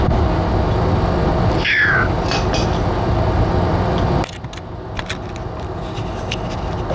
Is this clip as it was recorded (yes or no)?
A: yes